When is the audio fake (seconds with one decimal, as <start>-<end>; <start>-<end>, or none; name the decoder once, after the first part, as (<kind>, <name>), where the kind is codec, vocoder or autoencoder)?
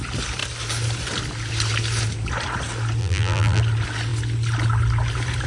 3.0-3.6 (vocoder, BigVGAN v2)